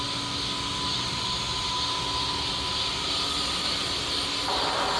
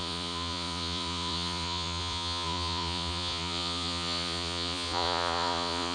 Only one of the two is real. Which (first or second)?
first